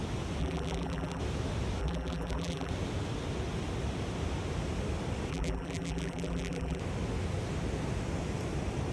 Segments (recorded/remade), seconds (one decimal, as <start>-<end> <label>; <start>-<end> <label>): 0.0-0.4 recorded; 0.4-1.2 remade; 1.2-1.8 recorded; 1.8-2.7 remade; 2.7-5.3 recorded; 5.3-6.8 remade; 6.8-8.9 recorded